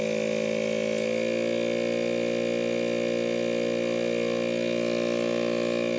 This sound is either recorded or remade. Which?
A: recorded